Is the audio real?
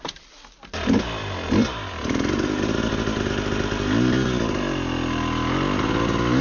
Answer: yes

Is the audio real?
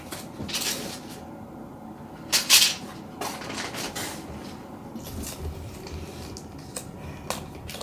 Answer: yes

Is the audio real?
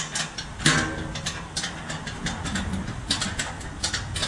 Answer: yes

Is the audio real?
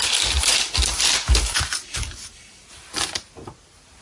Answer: yes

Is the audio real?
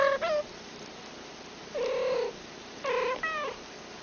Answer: yes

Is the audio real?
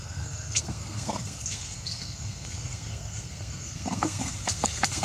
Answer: no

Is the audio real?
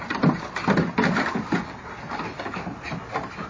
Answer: yes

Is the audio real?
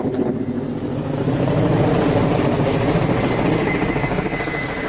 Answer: yes